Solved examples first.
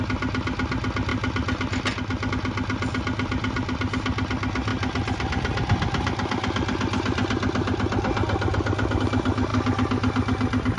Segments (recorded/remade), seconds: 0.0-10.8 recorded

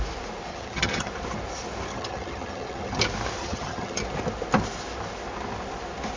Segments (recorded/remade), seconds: 0.0-0.5 recorded; 0.5-1.1 remade; 1.1-1.9 recorded; 1.9-3.0 remade; 3.0-3.4 recorded; 3.4-4.0 remade; 4.0-6.2 recorded

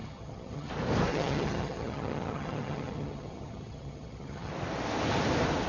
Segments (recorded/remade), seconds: 0.0-0.7 remade; 0.7-1.1 recorded; 1.1-4.5 remade; 4.5-5.7 recorded